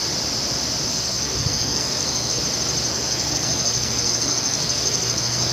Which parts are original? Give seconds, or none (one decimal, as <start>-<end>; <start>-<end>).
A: 0.0-0.9; 2.4-2.9